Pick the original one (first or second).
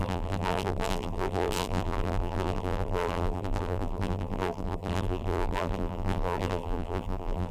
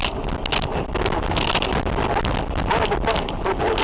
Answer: second